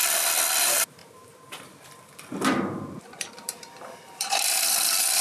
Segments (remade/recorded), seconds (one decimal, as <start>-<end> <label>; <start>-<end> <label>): 0.0-0.6 recorded; 0.6-5.2 remade